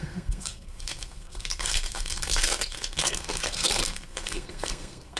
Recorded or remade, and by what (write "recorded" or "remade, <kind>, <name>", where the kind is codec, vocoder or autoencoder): remade, codec, SNAC